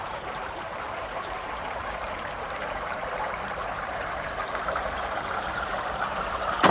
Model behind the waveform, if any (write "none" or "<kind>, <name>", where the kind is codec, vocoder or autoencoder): vocoder, BigVGAN v2